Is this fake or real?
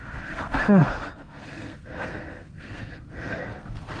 fake